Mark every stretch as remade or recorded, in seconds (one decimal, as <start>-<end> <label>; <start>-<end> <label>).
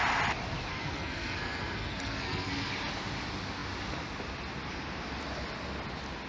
0.0-0.7 recorded; 0.7-2.7 remade; 2.7-6.3 recorded